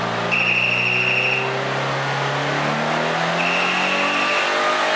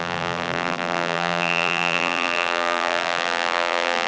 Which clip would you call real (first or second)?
first